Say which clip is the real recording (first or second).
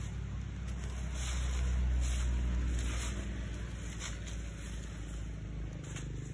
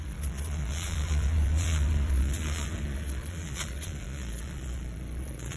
first